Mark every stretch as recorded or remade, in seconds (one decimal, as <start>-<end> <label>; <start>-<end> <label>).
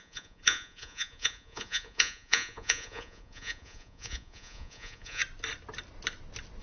0.0-5.2 remade; 5.2-6.6 recorded